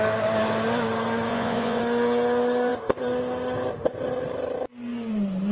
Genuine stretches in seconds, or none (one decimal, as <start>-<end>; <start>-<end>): 0.0-1.3; 1.8-5.5